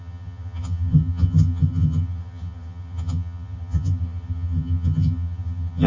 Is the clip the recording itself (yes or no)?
no